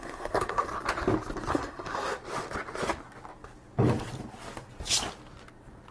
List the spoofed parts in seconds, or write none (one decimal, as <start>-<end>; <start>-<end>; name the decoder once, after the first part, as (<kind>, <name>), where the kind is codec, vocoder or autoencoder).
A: 0.0-0.7 (codec, SNAC); 1.5-2.2